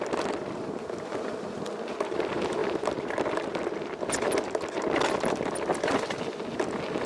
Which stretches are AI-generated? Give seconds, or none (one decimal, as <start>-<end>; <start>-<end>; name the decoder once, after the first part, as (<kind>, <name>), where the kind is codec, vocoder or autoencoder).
2.6-3.2 (vocoder, BigVGAN v2)